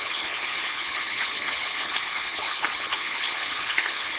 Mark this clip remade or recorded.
remade